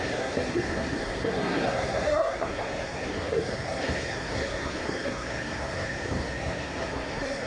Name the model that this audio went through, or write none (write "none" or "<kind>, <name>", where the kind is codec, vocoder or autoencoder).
codec, SNAC